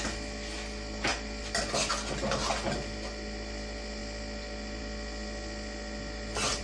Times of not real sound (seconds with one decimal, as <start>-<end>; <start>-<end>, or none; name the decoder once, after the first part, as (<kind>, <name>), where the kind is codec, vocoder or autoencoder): none

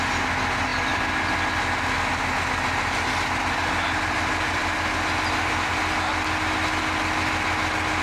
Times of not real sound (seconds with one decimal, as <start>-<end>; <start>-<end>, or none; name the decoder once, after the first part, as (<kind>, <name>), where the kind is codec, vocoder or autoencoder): none

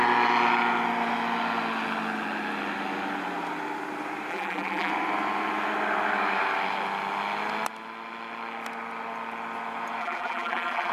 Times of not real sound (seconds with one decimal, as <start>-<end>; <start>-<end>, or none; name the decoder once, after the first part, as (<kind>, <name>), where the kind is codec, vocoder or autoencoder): 4.3-4.9 (vocoder, BigVGAN v2); 10.0-10.9

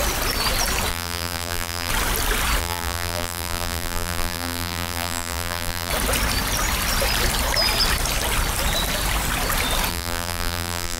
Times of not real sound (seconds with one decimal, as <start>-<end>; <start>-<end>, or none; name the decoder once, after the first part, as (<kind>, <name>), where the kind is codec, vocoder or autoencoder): 0.9-1.9 (vocoder, BigVGAN v2); 2.6-5.9; 9.9-11.0

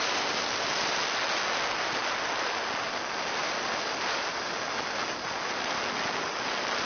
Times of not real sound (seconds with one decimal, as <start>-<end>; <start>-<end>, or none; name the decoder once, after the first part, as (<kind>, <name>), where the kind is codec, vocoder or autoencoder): none

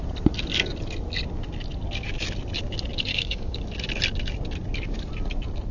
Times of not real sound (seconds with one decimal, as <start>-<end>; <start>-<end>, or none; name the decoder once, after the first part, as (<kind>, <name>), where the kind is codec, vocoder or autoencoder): 3.1-3.6 (codec, DAC)

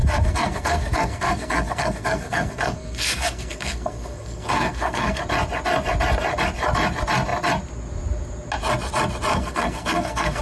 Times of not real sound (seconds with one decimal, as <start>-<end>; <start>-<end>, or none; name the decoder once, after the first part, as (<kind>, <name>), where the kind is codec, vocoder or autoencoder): 0.0-5.2 (codec, SNAC); 9.3-10.4